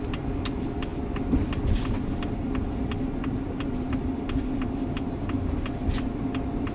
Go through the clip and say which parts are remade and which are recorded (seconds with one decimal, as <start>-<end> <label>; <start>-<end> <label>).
0.0-6.7 recorded